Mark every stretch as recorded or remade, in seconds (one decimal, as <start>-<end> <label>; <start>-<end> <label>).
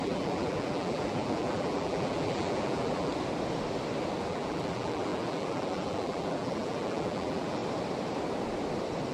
0.0-3.1 remade; 3.1-4.2 recorded; 4.2-7.6 remade; 7.6-9.1 recorded